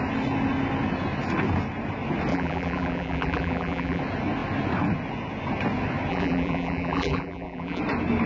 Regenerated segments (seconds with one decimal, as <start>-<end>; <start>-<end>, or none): 2.3-4.0; 6.1-7.8